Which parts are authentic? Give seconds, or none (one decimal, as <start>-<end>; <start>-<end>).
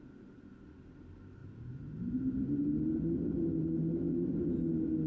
0.0-1.4; 2.5-5.1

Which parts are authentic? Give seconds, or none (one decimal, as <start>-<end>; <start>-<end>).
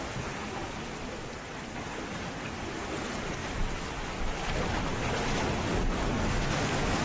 0.0-0.6; 1.1-3.4; 6.2-7.0